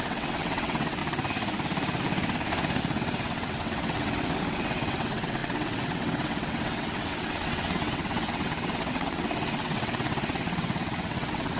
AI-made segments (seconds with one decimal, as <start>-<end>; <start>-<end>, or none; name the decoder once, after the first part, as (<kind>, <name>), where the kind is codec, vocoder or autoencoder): 0.0-1.0 (vocoder, WaveNeXt); 2.8-11.6